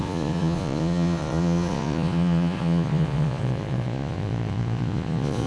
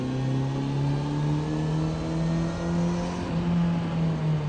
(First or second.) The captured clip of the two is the second